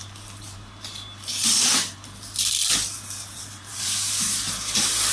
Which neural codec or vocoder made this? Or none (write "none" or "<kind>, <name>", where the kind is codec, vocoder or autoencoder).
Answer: vocoder, BigVGAN v2